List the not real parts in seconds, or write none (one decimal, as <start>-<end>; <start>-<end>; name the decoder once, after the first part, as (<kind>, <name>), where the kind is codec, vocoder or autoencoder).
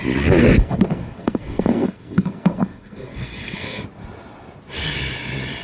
0.4-3.8 (codec, SNAC)